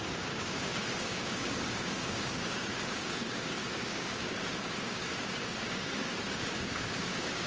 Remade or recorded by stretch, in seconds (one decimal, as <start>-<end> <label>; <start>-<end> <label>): 0.0-7.5 remade